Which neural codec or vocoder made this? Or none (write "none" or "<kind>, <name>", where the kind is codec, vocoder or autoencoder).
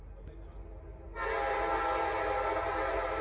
none